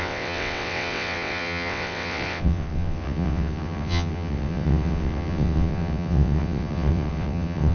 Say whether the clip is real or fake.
fake